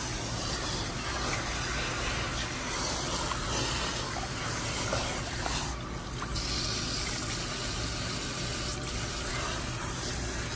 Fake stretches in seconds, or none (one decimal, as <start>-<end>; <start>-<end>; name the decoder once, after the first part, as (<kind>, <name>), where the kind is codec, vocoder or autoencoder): 4.9-5.7 (vocoder, BigVGAN v2); 8.7-9.3